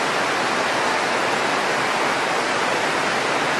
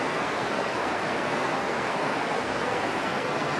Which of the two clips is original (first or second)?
first